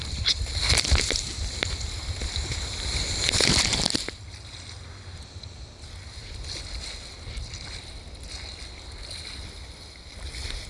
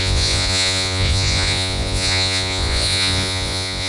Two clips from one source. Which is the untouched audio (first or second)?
first